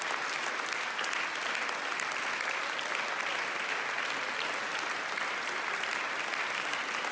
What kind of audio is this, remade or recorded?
recorded